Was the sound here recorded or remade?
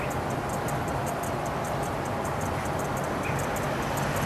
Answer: recorded